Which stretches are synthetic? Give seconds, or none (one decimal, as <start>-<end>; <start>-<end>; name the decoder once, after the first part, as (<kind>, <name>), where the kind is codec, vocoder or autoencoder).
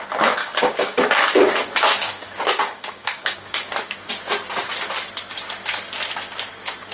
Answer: 0.4-4.1 (codec, DAC)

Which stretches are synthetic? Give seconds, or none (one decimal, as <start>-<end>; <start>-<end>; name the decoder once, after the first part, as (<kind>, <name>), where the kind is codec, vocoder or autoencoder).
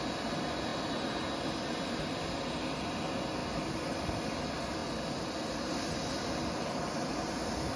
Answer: 3.4-4.0 (vocoder, BigVGAN v2)